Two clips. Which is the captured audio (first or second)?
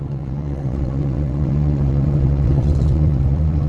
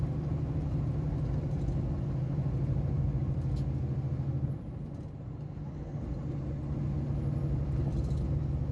second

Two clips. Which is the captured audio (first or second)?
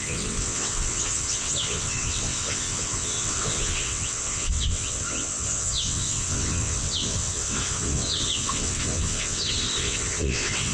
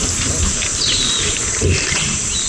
second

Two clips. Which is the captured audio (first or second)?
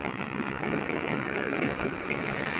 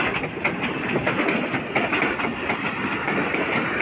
second